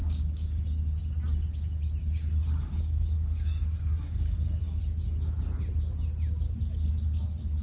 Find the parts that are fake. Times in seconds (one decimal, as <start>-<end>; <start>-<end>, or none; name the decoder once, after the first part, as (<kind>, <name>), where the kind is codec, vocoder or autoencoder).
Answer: 0.0-1.0 (codec, DAC); 2.0-4.8